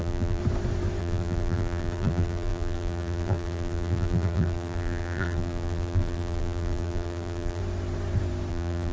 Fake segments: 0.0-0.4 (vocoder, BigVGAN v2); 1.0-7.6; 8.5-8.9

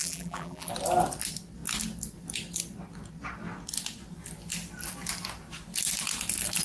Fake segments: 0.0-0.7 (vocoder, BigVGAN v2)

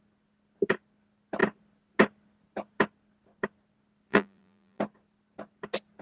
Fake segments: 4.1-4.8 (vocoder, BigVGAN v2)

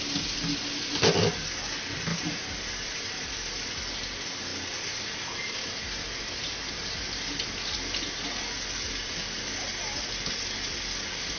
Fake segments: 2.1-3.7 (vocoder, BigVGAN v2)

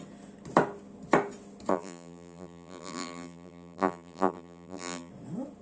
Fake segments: 1.7-5.1 (vocoder, BigVGAN v2)